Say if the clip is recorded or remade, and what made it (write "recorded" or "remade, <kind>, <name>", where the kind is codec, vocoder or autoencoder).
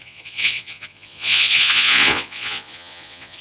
remade, vocoder, Vocos